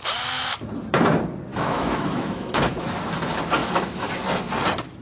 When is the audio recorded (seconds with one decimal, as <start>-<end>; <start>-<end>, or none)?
0.0-1.5; 2.8-3.6; 4.1-5.0